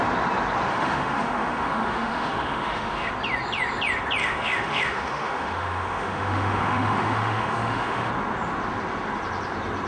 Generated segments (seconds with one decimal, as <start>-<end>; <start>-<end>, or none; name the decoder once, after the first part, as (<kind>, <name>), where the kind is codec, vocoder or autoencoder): 0.7-3.1 (autoencoder, DAC-VAE); 4.2-8.1